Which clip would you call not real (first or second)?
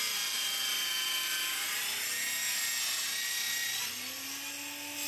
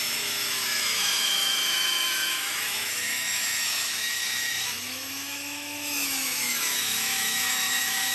second